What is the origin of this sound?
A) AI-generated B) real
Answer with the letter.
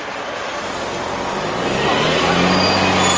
B